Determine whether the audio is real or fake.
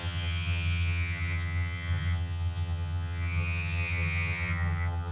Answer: fake